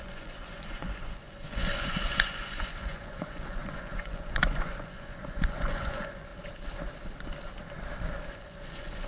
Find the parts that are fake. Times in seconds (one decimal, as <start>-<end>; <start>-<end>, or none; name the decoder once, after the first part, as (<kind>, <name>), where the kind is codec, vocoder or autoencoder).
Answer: 0.0-6.3 (vocoder, Vocos); 8.3-9.1